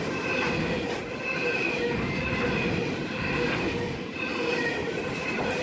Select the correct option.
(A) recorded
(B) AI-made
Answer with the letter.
A